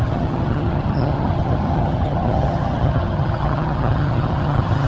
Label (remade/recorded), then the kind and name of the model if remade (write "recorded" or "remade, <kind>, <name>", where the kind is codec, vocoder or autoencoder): remade, vocoder, HiFi-GAN